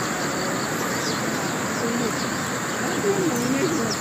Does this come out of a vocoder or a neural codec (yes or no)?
no